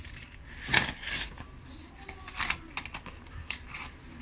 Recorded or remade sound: recorded